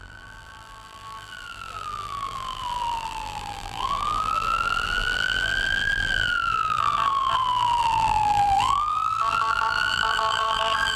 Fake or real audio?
fake